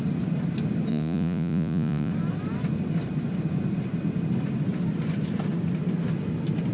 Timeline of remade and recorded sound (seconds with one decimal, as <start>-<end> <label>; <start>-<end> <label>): 0.0-0.9 recorded; 0.9-2.1 remade; 2.1-6.7 recorded